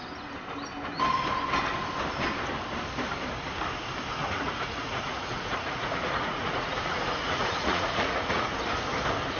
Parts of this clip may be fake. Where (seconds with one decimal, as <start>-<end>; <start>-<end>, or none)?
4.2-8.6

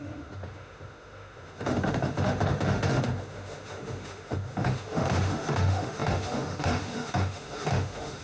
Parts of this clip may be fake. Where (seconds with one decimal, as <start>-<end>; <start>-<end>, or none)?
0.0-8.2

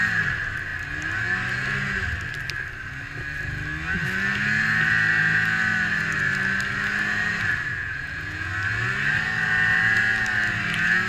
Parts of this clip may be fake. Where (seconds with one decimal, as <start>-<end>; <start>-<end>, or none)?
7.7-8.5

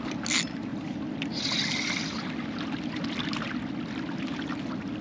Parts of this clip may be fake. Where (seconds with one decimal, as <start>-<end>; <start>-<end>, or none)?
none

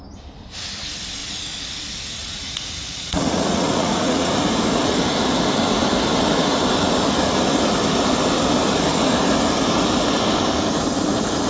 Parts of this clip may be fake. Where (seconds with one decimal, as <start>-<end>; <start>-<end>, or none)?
2.2-4.3